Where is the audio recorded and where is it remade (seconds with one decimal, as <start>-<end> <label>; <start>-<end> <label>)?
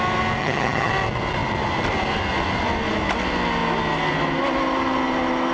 0.0-0.4 recorded; 0.4-0.9 remade; 0.9-5.5 recorded